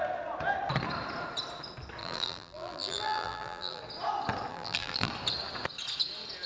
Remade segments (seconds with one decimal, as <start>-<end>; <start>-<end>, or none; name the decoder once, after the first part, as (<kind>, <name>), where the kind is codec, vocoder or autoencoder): 2.0-3.8 (vocoder, BigVGAN v2); 4.5-5.1